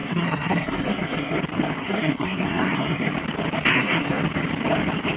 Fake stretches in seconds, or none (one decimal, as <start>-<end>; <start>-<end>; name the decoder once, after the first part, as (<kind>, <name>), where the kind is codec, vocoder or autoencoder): 0.0-1.4 (codec, SNAC); 1.8-3.1; 3.7-4.2